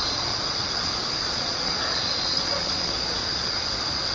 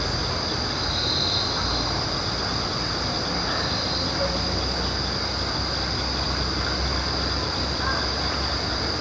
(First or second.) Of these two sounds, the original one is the second